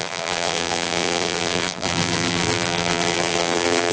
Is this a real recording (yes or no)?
no